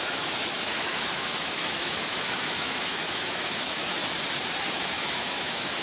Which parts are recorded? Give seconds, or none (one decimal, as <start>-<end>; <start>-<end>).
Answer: 4.0-4.7